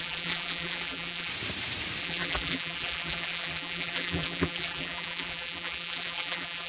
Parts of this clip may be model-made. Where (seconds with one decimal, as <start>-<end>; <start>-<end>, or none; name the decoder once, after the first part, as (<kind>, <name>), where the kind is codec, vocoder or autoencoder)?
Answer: 0.0-1.3 (vocoder, BigVGAN v2); 2.0-6.7